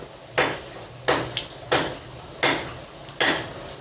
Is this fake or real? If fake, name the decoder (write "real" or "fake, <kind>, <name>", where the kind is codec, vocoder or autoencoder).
real